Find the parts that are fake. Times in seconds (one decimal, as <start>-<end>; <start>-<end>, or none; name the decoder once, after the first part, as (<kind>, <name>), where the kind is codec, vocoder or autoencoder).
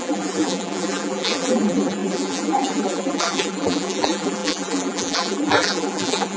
0.0-6.4 (vocoder, BigVGAN v2)